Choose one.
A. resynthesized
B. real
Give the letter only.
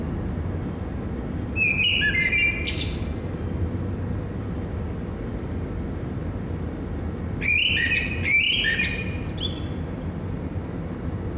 B